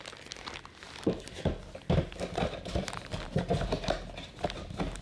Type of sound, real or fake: real